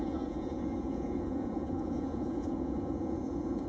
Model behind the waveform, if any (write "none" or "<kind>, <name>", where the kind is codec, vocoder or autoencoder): vocoder, Vocos